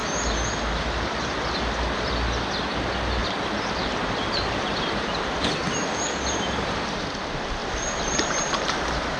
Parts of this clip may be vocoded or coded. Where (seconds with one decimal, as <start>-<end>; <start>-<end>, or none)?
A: 3.2-5.5; 7.6-9.2